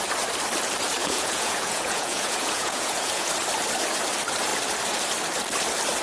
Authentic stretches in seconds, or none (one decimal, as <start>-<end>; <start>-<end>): 0.0-1.0; 3.3-6.0